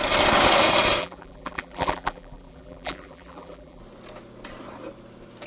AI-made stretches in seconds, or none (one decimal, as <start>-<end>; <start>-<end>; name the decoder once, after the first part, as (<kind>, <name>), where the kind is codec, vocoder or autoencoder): 1.0-3.8 (vocoder, BigVGAN v2)